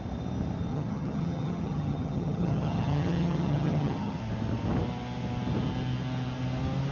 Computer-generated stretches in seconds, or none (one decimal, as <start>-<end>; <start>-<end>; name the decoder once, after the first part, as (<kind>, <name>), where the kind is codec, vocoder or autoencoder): 0.7-4.2 (vocoder, HiFi-GAN)